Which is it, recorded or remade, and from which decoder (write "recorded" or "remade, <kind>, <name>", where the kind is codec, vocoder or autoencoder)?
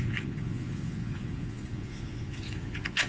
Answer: remade, vocoder, Vocos